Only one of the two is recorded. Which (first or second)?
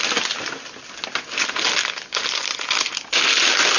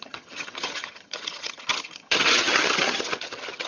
first